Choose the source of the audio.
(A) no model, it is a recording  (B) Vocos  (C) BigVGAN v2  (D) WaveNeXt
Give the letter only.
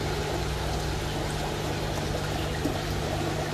A